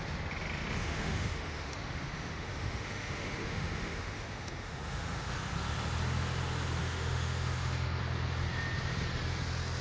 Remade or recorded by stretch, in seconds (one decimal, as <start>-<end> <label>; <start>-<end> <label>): 0.0-0.8 recorded; 0.8-5.5 remade; 5.5-6.8 recorded; 6.8-8.0 remade; 8.0-9.8 recorded